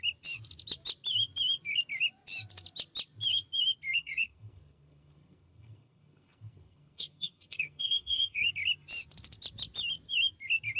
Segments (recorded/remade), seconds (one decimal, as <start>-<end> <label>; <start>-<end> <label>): 0.0-3.9 recorded; 3.9-8.5 remade; 8.5-10.8 recorded